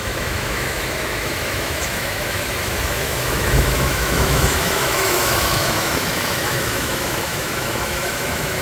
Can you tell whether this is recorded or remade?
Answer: remade